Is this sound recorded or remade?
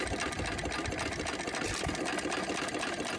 recorded